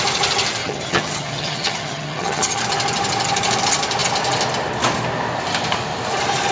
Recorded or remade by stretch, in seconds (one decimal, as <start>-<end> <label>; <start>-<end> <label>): 0.0-0.6 recorded; 0.6-2.6 remade; 2.6-6.5 recorded